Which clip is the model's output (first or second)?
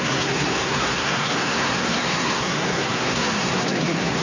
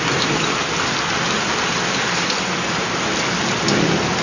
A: first